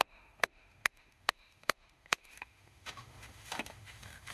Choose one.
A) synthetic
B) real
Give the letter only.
A